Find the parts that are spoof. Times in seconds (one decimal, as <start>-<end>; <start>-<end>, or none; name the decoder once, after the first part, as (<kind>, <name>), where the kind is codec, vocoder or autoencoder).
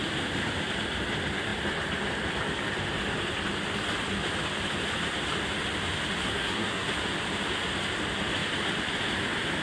6.2-6.9 (codec, SNAC)